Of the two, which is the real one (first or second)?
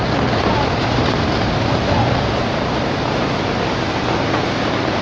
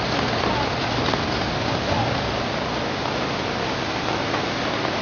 second